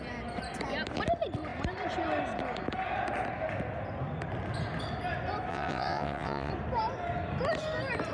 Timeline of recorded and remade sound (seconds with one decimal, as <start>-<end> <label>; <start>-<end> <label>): 0.0-5.5 recorded; 5.5-6.5 remade; 6.5-8.1 recorded